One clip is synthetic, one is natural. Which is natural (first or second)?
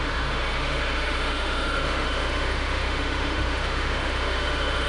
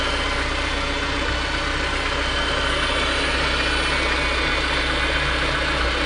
second